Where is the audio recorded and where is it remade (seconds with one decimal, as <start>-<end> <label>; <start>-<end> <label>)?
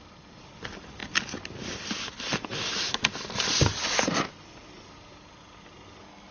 0.0-6.3 recorded